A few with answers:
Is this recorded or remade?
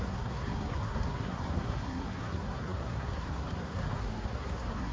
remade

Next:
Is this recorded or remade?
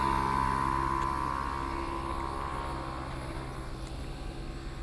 recorded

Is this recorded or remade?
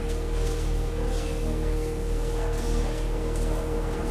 remade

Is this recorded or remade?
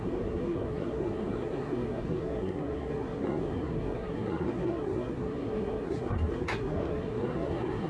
remade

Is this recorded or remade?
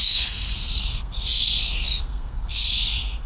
remade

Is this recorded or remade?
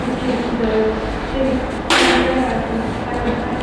recorded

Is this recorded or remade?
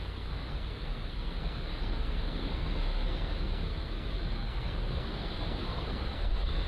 remade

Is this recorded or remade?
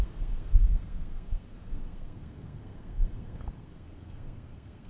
remade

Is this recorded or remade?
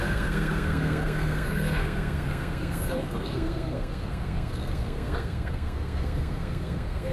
remade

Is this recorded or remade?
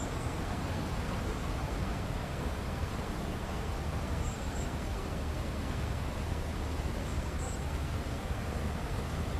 remade